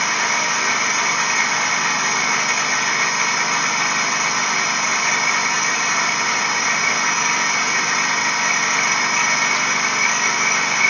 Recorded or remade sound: recorded